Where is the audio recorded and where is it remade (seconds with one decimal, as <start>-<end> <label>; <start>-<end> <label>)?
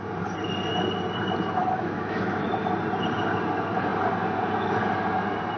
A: 0.0-1.6 recorded; 1.6-2.5 remade; 2.5-5.6 recorded